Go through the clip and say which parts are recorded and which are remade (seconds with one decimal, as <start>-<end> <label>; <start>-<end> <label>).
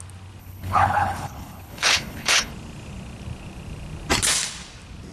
0.0-0.4 recorded; 0.4-2.5 remade; 2.5-5.1 recorded